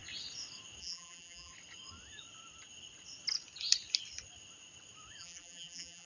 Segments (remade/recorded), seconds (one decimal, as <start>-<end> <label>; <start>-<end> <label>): 0.0-0.8 recorded; 0.8-1.5 remade; 1.5-5.2 recorded; 5.2-6.1 remade